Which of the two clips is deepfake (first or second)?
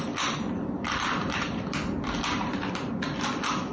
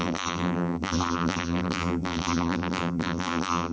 second